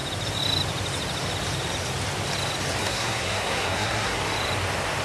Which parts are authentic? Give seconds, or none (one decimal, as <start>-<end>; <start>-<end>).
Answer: 0.0-2.8; 4.2-5.0